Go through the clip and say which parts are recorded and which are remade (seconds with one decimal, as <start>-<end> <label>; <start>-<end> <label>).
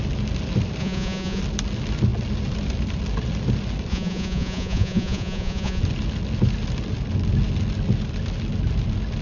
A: 0.0-0.8 recorded; 0.8-1.4 remade; 1.4-3.9 recorded; 3.9-5.8 remade; 5.8-9.2 recorded